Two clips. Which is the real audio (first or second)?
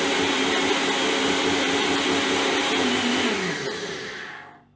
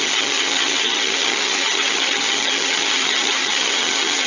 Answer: first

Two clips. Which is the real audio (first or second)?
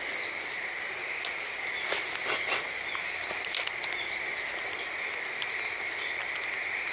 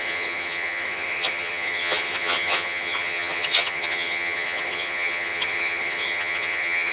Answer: first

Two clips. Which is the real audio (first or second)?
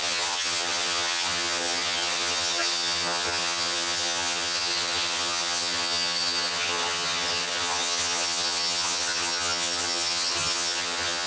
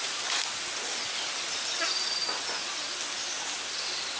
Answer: second